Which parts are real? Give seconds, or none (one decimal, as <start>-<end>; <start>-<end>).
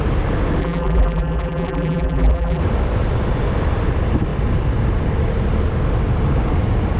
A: 0.0-0.6; 2.6-7.0